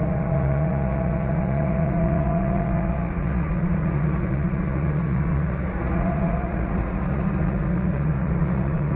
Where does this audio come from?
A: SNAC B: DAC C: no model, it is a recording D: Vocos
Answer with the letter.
D